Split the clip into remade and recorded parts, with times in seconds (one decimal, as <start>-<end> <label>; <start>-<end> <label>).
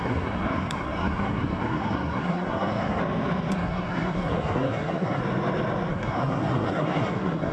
0.0-3.0 remade; 3.0-3.5 recorded; 3.5-5.2 remade; 5.2-5.9 recorded; 5.9-7.5 remade